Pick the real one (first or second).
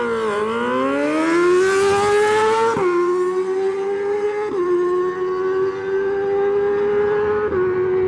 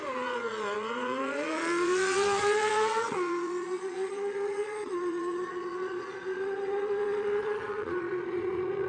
first